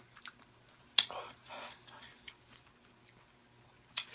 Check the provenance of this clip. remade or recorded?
recorded